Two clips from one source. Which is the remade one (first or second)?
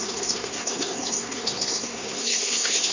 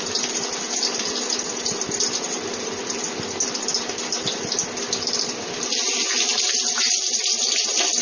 first